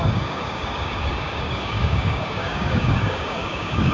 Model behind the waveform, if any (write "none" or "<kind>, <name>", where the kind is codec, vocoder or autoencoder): codec, DAC